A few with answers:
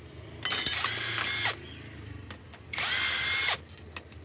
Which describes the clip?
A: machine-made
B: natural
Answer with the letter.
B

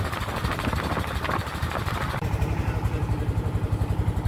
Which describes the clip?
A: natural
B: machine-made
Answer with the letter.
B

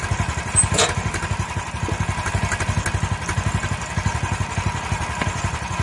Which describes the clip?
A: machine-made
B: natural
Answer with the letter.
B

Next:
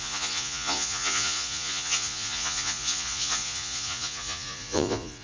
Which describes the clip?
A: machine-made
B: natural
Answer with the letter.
A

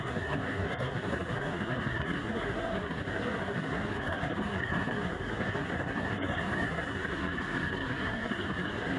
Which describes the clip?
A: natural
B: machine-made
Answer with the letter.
B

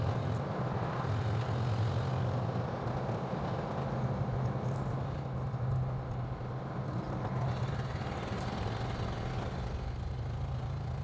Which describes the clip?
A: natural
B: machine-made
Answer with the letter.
A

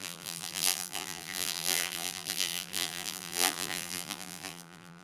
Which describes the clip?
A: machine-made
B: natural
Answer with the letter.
A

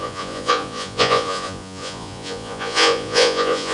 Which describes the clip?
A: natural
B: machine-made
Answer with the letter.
B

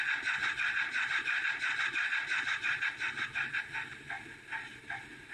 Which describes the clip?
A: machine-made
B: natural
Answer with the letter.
A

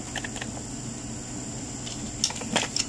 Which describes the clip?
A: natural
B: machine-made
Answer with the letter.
A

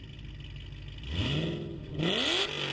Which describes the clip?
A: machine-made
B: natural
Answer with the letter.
B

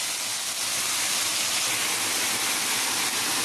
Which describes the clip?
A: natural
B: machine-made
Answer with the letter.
A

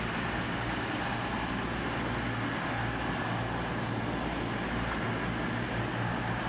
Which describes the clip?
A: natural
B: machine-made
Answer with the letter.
A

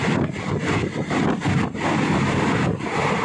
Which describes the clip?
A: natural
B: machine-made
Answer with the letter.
A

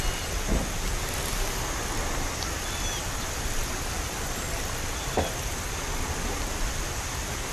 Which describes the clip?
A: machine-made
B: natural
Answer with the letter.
B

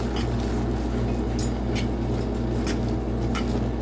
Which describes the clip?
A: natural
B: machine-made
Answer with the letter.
A